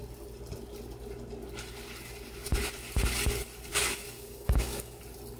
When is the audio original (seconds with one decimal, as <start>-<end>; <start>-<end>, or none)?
0.0-3.7; 5.0-5.4